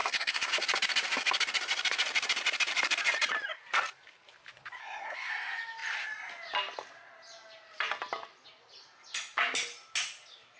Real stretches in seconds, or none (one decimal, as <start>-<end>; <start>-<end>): 0.5-4.8; 5.3-10.6